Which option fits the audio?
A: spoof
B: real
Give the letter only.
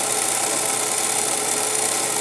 B